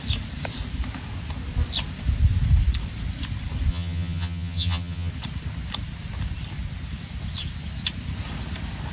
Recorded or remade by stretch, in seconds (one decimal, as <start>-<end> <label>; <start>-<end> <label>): 0.0-3.7 recorded; 3.7-5.1 remade; 5.1-8.9 recorded